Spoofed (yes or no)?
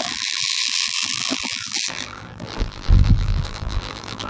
yes